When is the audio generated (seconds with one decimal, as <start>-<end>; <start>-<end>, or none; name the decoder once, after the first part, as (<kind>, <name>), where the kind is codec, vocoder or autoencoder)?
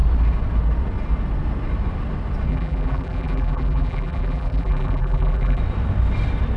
2.5-5.6 (vocoder, BigVGAN v2)